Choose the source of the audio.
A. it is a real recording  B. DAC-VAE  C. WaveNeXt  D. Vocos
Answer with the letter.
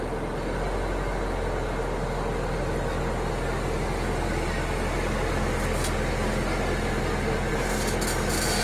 A